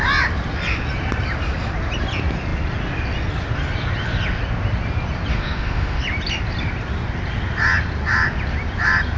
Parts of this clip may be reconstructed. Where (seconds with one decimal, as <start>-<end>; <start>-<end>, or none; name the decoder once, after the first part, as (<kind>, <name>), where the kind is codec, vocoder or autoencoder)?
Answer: 5.3-6.0 (autoencoder, DAC-VAE)